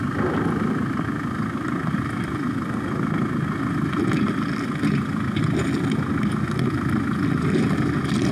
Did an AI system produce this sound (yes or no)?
no